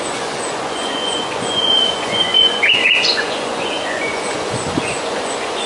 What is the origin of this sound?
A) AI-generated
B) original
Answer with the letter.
A